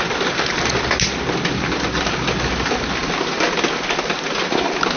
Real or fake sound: real